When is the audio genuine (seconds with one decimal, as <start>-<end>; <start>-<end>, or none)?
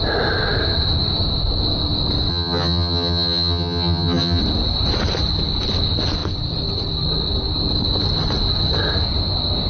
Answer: 0.0-2.3; 4.4-9.7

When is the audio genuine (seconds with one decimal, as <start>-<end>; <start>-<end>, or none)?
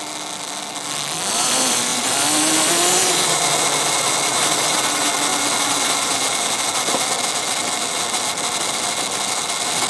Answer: 0.0-9.9